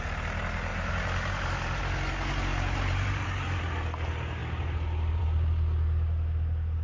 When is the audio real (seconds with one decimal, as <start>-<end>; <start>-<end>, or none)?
0.0-0.7; 1.8-2.5; 3.6-6.8